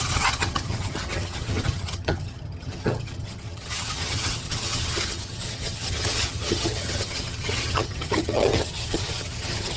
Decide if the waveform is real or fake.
fake